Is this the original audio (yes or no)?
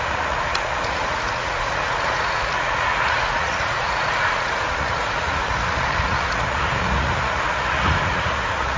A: no